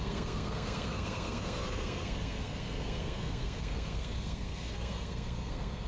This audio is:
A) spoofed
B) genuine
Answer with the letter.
A